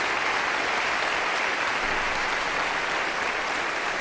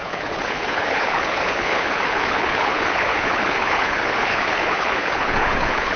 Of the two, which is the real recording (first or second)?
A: first